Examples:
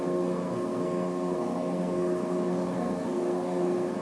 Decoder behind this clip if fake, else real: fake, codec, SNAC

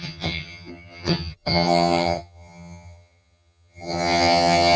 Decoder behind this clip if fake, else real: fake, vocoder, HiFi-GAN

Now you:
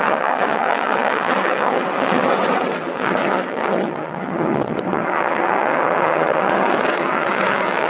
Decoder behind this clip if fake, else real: fake, vocoder, WaveNeXt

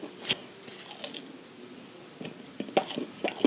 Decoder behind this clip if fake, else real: real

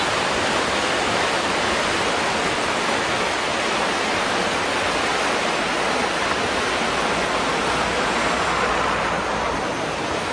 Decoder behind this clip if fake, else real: real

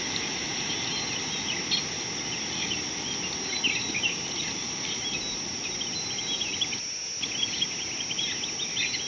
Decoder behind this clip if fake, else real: real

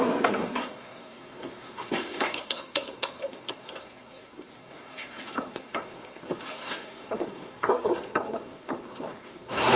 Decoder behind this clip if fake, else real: fake, codec, SNAC